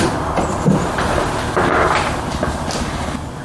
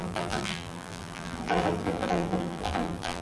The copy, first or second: second